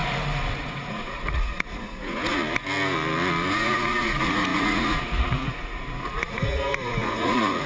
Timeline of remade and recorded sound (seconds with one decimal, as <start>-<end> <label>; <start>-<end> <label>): 0.0-0.6 recorded; 0.6-2.4 remade; 2.4-3.5 recorded; 3.5-7.7 remade